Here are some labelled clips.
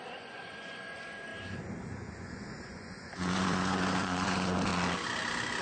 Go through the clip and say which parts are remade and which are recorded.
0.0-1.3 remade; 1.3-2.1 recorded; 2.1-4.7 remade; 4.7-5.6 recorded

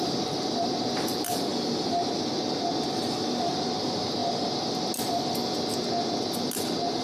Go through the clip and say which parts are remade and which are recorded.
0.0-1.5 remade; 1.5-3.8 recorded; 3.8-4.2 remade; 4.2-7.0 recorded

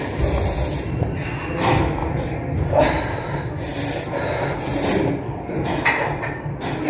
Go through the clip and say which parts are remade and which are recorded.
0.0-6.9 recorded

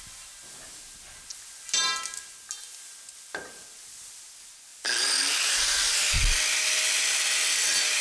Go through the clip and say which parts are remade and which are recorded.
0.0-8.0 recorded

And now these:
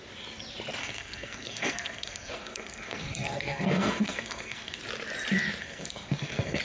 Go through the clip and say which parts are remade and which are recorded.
0.0-0.8 recorded; 0.8-4.8 remade; 4.8-5.6 recorded; 5.6-6.6 remade